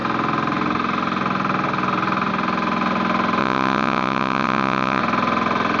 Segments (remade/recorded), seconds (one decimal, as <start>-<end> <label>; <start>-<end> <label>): 0.0-3.4 recorded; 3.4-5.0 remade; 5.0-5.8 recorded